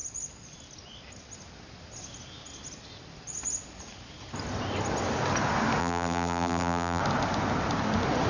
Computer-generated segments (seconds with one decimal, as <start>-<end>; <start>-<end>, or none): 5.8-7.0